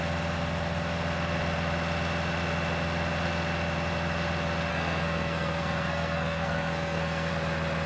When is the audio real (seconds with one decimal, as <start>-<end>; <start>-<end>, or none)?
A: 0.0-4.7; 7.3-7.9